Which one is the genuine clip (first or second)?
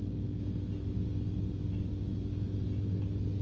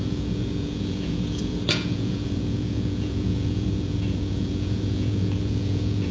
first